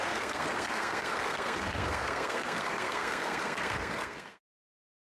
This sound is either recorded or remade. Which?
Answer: remade